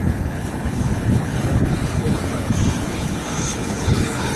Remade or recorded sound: remade